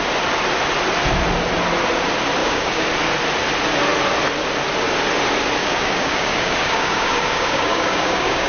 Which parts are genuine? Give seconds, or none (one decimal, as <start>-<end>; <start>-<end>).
0.0-2.4; 2.9-5.6